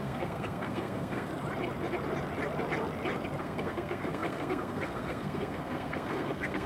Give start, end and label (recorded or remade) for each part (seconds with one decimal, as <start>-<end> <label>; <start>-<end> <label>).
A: 0.0-1.3 remade; 1.3-3.4 recorded; 3.4-6.7 remade